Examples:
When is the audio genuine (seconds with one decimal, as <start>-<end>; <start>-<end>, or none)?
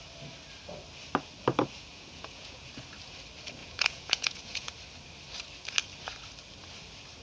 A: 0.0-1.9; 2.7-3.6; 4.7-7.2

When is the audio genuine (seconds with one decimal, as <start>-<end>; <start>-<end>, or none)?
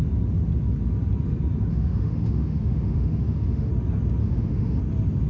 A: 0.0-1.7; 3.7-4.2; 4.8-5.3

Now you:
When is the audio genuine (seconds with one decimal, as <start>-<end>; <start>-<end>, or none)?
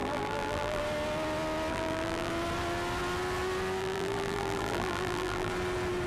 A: 0.8-1.7; 2.3-3.8; 5.5-6.1